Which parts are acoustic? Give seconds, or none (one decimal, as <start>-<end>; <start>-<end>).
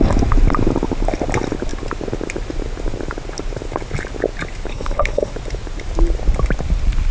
0.0-4.7; 5.3-7.1